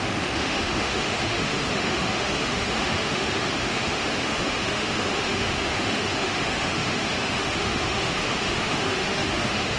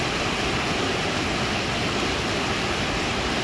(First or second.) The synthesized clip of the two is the first